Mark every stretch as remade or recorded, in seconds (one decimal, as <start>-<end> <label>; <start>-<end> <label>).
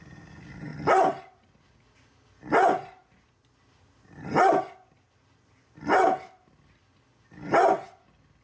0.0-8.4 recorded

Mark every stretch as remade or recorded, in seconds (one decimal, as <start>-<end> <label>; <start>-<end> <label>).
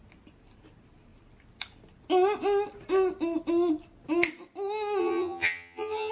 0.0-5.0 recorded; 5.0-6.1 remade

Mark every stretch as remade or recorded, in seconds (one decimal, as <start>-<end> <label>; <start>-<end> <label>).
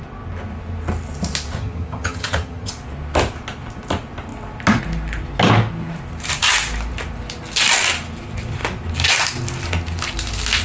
0.0-1.6 recorded; 1.6-2.7 remade; 2.7-10.6 recorded